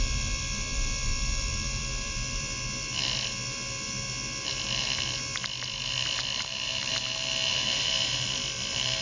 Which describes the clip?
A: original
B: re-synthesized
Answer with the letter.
B